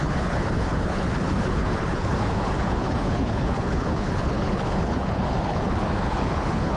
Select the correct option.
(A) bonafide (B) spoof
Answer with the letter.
B